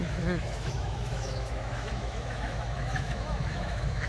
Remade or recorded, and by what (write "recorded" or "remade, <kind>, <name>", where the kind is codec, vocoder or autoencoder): remade, autoencoder, DAC-VAE